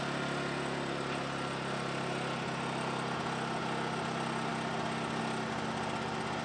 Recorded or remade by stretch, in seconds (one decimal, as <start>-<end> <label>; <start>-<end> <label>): 0.0-6.4 recorded